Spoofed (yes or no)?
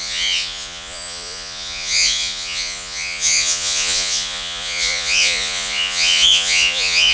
yes